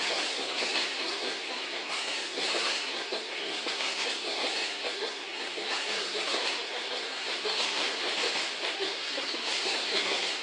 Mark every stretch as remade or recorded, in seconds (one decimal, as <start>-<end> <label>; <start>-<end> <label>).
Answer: 0.0-8.0 remade; 8.0-8.6 recorded; 8.6-10.4 remade